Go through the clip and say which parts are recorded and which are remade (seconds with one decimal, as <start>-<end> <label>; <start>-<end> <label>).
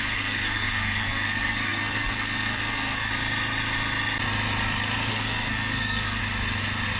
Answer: 0.0-3.1 remade; 3.1-5.1 recorded; 5.1-6.2 remade; 6.2-7.0 recorded